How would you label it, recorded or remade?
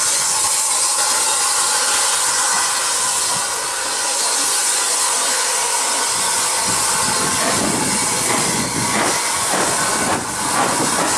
remade